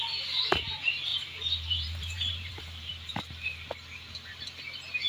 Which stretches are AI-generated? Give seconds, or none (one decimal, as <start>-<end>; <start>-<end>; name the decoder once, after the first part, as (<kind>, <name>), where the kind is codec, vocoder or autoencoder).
0.0-3.1 (vocoder, BigVGAN v2)